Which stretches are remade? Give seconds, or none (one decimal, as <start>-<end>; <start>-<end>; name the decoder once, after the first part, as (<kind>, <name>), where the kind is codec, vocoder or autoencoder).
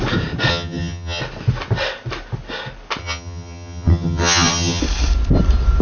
0.5-1.2 (vocoder, HiFi-GAN); 3.0-4.8